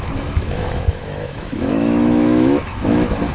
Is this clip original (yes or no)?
no